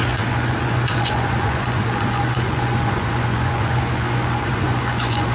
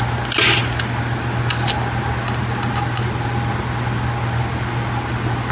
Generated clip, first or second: first